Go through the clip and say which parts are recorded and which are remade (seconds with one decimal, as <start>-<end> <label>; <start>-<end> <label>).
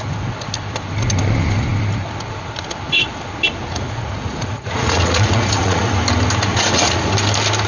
0.0-3.6 recorded; 3.6-5.8 remade; 5.8-6.5 recorded; 6.5-7.1 remade; 7.1-7.7 recorded